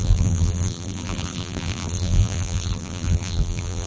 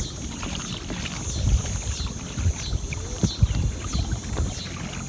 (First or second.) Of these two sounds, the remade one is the first